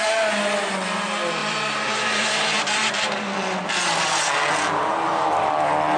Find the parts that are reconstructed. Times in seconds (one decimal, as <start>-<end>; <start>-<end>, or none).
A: 1.4-4.3